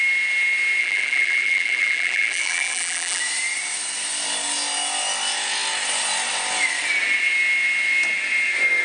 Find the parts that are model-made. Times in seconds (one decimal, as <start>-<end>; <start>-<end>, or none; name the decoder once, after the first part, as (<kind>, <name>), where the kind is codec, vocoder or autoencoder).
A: 0.8-3.2 (vocoder, BigVGAN v2)

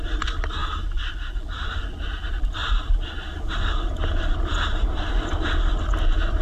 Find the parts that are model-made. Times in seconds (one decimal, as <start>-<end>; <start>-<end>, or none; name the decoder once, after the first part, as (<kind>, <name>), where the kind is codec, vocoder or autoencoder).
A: 2.6-3.1 (vocoder, BigVGAN v2)